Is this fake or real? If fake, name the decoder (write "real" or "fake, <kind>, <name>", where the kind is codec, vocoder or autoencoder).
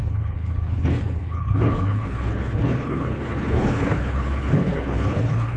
fake, codec, HILCodec